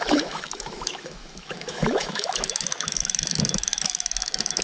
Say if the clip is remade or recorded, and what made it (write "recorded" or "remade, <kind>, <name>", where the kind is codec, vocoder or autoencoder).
remade, autoencoder, DAC-VAE